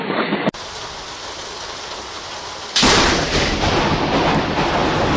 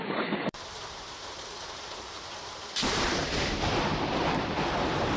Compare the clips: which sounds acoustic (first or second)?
first